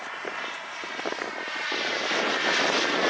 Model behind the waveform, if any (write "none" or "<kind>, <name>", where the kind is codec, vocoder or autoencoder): none